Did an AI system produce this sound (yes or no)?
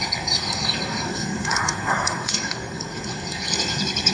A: yes